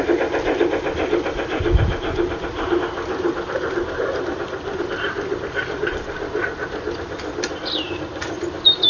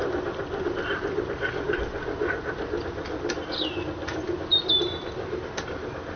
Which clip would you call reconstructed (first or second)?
first